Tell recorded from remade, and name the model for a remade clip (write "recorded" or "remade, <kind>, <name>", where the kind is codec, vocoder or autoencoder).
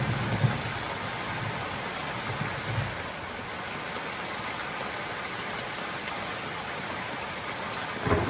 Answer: recorded